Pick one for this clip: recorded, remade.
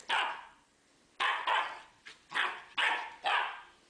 recorded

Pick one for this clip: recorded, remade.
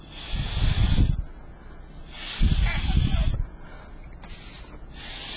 recorded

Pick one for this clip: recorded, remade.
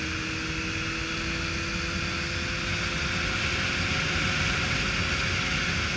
recorded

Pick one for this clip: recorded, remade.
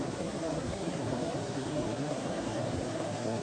remade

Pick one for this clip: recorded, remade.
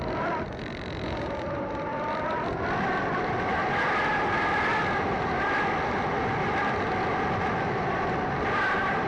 recorded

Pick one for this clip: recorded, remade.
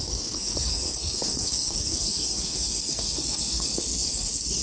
remade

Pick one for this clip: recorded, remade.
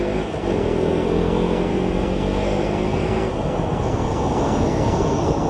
remade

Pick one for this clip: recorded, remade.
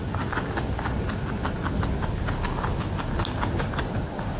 recorded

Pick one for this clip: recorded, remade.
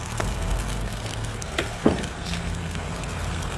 remade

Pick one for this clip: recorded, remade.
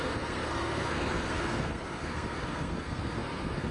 remade